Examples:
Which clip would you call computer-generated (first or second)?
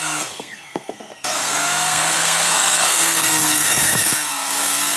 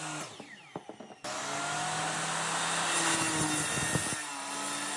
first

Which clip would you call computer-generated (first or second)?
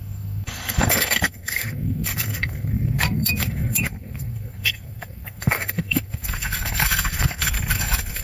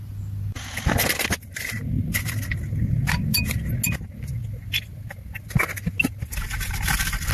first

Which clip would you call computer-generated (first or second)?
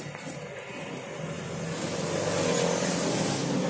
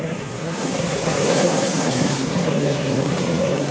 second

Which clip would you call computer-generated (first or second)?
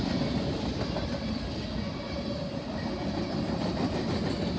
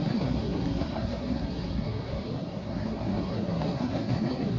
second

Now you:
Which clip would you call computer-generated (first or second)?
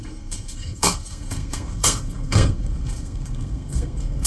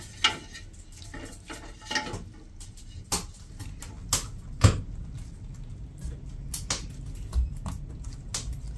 first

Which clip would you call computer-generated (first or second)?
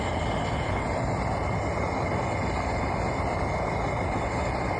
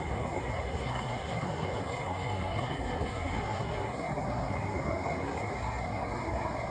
second